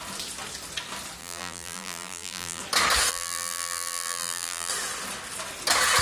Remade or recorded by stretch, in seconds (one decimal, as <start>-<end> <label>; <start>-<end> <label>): 0.0-1.2 recorded; 1.2-2.6 remade; 2.6-3.1 recorded; 3.1-4.7 remade; 4.7-6.0 recorded